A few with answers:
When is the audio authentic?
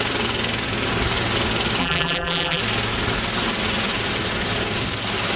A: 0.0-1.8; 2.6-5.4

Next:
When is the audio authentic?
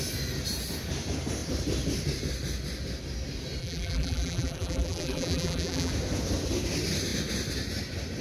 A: 0.0-3.6; 5.9-8.2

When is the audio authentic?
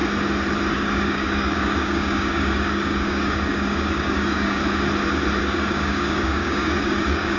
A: 0.0-0.7; 4.6-5.4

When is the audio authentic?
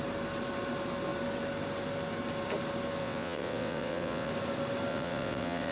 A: 0.0-3.0; 4.3-4.9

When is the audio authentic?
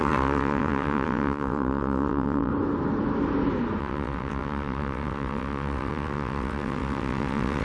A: 2.5-3.8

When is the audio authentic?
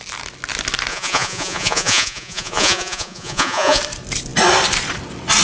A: 0.0-0.9; 3.8-5.4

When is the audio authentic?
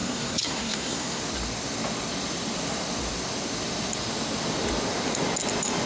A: 1.2-5.9